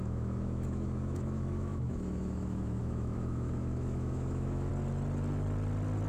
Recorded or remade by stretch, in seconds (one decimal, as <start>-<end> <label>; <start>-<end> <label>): 0.0-4.7 remade; 4.7-6.1 recorded